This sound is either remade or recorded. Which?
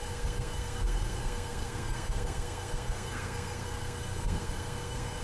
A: remade